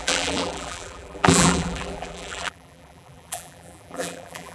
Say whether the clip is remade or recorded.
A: remade